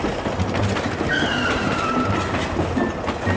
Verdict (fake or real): real